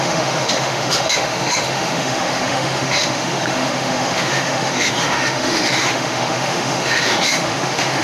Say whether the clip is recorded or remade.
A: remade